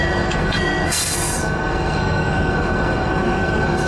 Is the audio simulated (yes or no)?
yes